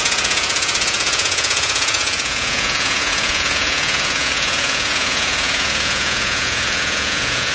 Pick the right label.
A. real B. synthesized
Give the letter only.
B